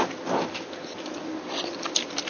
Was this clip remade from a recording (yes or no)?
no